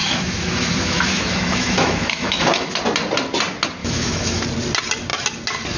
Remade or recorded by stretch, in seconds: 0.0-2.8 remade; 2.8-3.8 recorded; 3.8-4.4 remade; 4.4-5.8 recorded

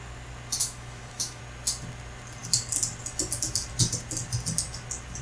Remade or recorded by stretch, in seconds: 0.0-0.6 recorded; 0.6-1.4 remade; 1.4-5.2 recorded

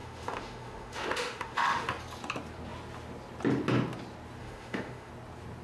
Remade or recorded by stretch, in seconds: 0.0-1.9 remade; 1.9-4.4 recorded; 4.4-5.1 remade; 5.1-5.6 recorded

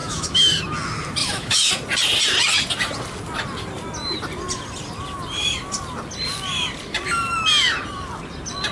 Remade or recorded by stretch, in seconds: 0.0-0.6 remade; 0.6-1.2 recorded; 1.2-1.7 remade; 1.7-8.7 recorded

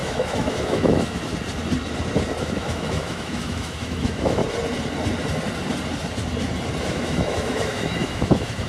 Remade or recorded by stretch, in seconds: 0.0-1.3 remade; 1.3-2.4 recorded; 2.4-4.4 remade; 4.4-6.8 recorded; 6.8-8.7 remade

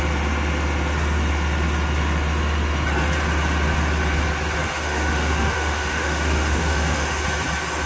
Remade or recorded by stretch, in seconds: 0.0-4.6 recorded; 4.6-7.2 remade; 7.2-7.9 recorded

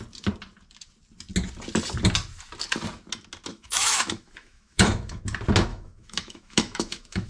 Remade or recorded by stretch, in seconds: 0.0-3.5 recorded; 3.5-5.2 remade; 5.2-5.7 recorded; 5.7-7.3 remade

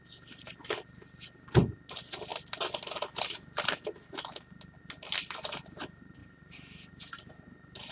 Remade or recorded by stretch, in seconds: 0.0-7.9 recorded